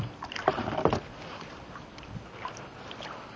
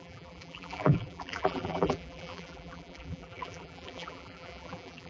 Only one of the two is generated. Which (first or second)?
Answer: second